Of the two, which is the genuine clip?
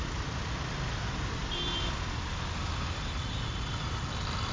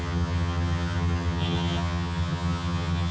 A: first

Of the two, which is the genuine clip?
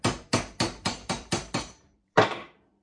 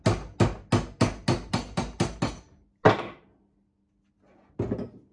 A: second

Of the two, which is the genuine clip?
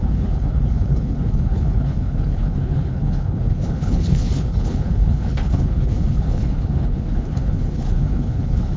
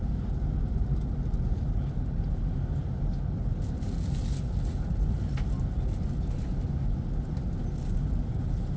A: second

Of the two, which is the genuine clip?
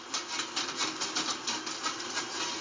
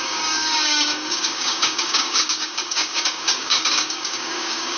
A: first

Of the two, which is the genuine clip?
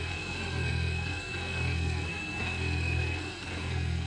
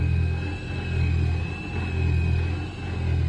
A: second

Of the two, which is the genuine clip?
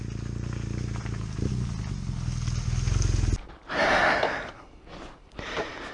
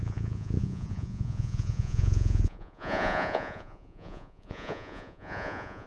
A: first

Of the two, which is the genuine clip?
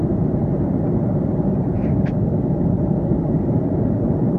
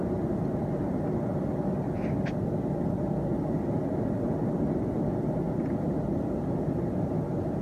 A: second